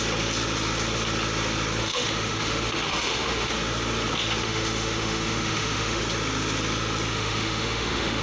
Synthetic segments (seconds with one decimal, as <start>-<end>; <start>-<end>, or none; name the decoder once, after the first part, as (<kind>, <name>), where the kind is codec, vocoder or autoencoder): 1.8-3.5 (autoencoder, DAC-VAE); 4.4-6.0; 7.1-8.2